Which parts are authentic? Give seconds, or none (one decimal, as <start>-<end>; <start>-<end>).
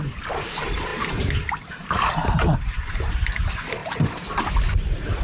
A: 0.0-5.2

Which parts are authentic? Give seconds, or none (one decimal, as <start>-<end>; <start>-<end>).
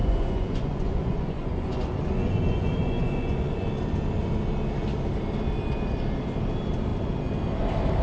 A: 3.8-8.0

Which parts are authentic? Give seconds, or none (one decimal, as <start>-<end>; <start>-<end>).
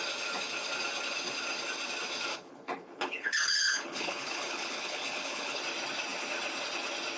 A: 0.0-2.3; 5.6-7.2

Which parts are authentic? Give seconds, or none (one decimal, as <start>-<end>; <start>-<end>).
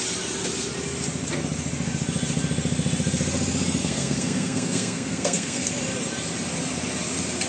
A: 0.0-3.8; 5.7-7.5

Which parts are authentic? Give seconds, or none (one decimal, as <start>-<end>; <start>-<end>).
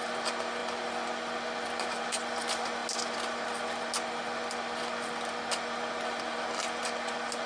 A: 0.0-7.5